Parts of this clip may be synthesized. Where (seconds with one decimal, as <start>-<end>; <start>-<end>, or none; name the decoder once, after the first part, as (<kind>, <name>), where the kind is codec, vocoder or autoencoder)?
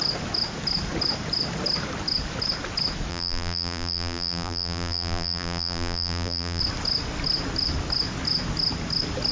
3.1-6.6 (vocoder, BigVGAN v2)